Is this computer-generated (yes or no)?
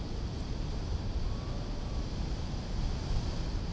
no